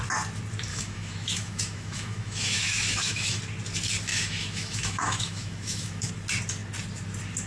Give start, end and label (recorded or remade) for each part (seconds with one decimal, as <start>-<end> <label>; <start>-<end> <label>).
0.0-0.7 recorded; 0.7-3.4 remade; 3.4-4.1 recorded; 4.1-6.1 remade; 6.1-7.5 recorded